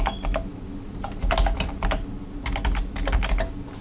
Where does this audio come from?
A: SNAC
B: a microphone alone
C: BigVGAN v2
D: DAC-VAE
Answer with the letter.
B